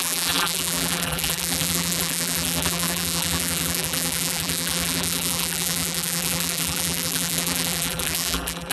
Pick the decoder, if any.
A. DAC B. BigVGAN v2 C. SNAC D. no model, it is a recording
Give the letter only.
B